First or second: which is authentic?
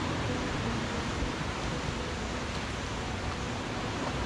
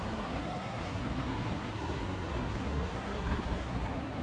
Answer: first